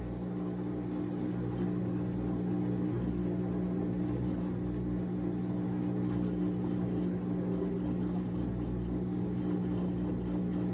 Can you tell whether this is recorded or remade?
recorded